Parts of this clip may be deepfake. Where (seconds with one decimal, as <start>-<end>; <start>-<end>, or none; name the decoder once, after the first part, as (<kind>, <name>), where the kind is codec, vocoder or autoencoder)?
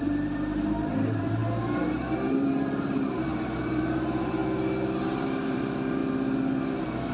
0.0-1.4 (vocoder, BigVGAN v2); 2.3-4.4; 5.0-6.0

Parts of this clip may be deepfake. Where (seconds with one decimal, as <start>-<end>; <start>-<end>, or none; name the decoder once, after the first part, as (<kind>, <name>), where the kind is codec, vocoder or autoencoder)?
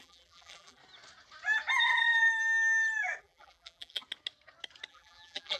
0.0-0.8 (vocoder, BigVGAN v2); 3.2-4.0; 4.9-5.6